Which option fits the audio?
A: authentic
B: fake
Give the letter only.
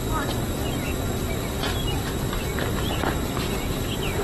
A